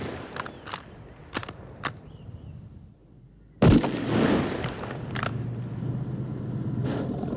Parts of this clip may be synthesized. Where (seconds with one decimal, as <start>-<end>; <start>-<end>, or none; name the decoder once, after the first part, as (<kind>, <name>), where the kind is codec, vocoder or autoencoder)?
0.0-1.2 (vocoder, BigVGAN v2); 3.0-4.1

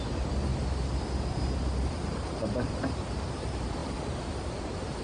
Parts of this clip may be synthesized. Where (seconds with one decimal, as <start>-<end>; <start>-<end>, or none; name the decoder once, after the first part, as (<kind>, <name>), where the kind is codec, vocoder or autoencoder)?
0.0-0.5 (vocoder, BigVGAN v2); 2.4-3.8; 4.3-5.0

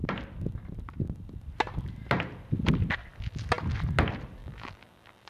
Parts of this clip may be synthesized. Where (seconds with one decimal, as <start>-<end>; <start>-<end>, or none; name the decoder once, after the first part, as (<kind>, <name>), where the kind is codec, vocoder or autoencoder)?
4.4-5.3 (vocoder, BigVGAN v2)

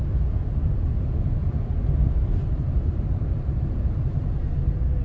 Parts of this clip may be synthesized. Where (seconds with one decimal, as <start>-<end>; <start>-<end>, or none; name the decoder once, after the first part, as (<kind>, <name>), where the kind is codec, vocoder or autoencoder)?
1.4-4.4 (vocoder, BigVGAN v2)

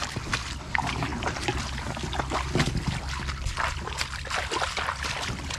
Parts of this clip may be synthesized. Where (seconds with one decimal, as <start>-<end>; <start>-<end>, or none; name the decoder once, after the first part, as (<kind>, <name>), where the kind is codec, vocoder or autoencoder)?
none

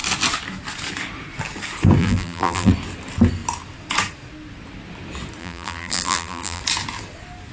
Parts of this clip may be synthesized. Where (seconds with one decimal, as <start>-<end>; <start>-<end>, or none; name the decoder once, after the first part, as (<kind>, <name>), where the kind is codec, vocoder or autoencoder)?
2.0-2.7 (vocoder, BigVGAN v2); 5.4-6.6